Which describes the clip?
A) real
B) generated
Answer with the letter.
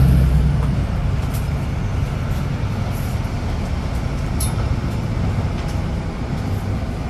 A